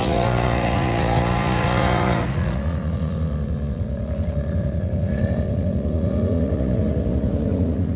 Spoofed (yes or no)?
yes